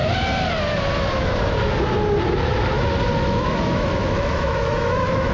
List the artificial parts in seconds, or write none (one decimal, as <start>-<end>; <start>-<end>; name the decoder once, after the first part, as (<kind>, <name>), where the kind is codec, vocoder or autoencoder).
3.2-5.3 (autoencoder, DAC-VAE)